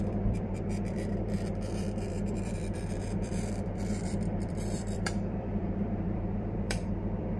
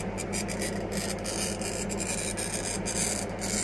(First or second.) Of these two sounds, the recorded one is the second